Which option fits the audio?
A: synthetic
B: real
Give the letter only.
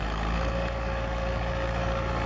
A